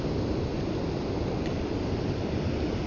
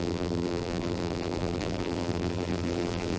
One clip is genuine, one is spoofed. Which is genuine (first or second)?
first